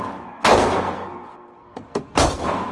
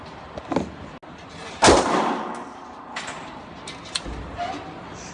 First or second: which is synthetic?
first